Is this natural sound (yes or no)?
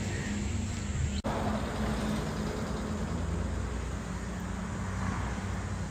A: yes